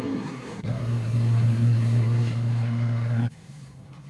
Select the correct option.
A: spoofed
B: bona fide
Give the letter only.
A